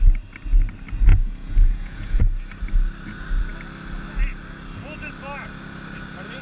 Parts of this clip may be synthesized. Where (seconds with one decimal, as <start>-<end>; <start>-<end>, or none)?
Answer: 1.1-2.2